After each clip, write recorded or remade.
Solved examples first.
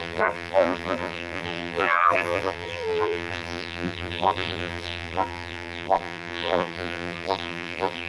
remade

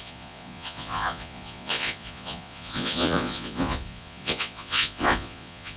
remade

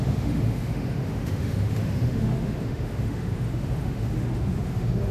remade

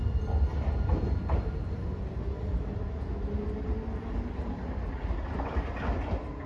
recorded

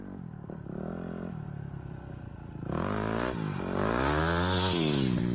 recorded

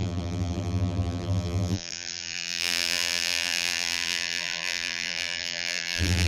remade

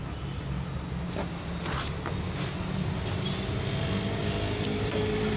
recorded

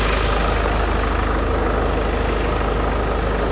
recorded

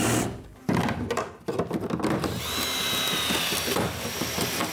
recorded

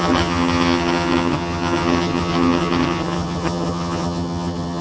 remade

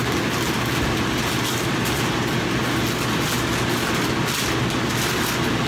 recorded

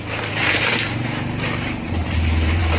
remade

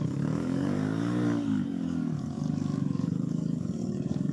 remade